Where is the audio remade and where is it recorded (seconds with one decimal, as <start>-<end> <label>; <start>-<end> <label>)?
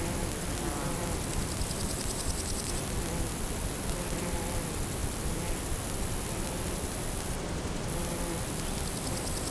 0.0-9.5 recorded